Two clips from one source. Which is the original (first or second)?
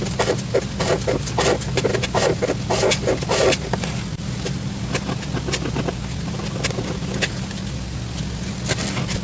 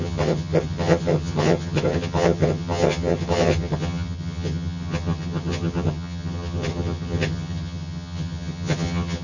first